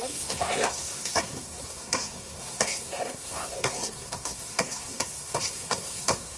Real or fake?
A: fake